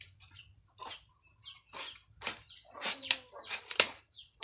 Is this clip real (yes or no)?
no